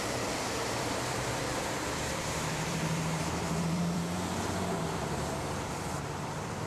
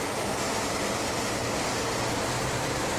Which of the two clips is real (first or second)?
second